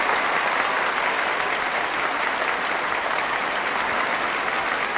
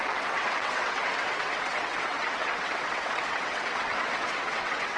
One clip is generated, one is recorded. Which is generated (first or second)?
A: second